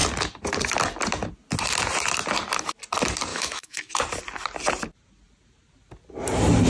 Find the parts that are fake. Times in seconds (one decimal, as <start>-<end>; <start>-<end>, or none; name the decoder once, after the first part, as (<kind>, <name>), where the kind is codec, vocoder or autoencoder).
3.3-3.9 (autoencoder, DAC-VAE)